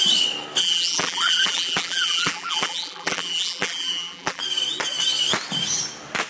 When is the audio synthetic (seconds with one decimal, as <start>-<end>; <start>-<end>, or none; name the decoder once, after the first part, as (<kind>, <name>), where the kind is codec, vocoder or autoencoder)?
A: 0.6-4.4 (vocoder, BigVGAN v2)